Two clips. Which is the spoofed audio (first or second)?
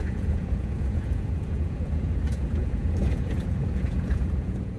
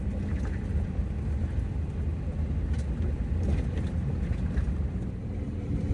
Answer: first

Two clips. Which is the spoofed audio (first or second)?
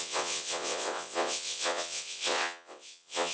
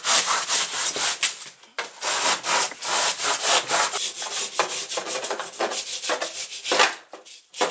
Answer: first